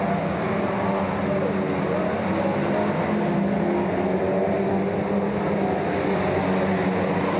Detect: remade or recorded recorded